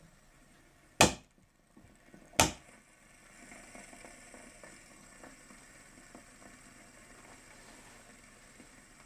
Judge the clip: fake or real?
real